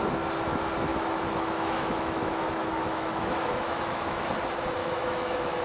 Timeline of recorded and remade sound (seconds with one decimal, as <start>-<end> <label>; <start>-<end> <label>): 0.0-0.9 recorded; 0.9-4.3 remade; 4.3-4.8 recorded; 4.8-5.6 remade